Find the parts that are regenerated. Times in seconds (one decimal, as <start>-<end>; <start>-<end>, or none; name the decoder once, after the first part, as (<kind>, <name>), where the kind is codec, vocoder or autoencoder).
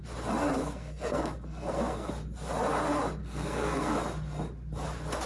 0.6-2.1 (codec, SNAC); 3.2-3.9